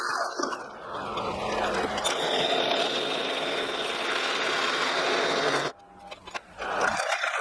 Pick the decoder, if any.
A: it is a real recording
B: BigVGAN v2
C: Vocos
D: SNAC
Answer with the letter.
A